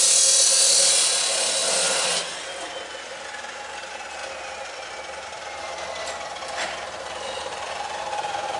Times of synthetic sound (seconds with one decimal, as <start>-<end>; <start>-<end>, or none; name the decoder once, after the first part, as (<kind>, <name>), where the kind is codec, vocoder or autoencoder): none